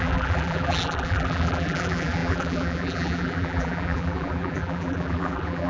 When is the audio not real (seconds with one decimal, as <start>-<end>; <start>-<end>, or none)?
0.0-5.7